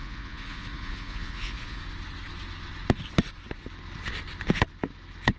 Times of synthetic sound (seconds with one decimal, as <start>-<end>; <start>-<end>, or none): 0.0-1.8